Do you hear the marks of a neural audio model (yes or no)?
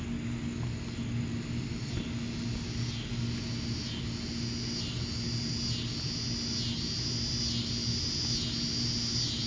no